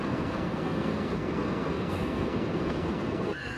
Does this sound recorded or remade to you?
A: remade